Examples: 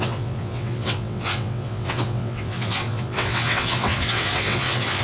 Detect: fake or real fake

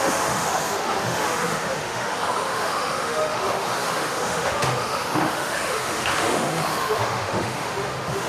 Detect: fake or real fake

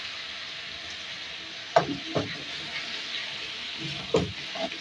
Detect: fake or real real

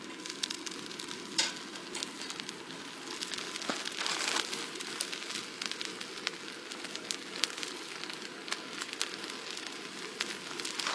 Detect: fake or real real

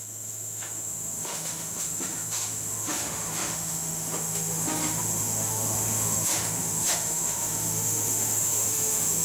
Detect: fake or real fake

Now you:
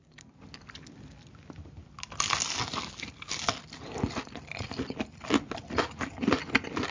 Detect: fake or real real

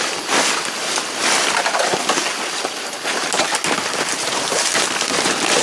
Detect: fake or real real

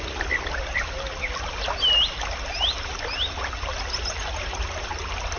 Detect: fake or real real